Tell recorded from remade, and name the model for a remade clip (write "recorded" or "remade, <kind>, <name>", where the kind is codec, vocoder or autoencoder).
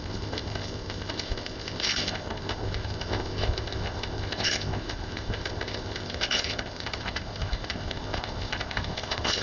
remade, codec, ZipCodec